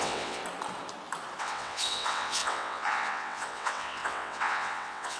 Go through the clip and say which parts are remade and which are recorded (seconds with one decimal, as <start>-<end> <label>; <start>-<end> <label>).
0.0-0.4 remade; 0.4-1.4 recorded; 1.4-5.2 remade